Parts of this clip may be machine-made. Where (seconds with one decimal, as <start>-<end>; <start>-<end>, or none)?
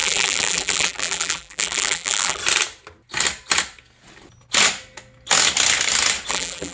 0.0-2.4; 6.3-6.7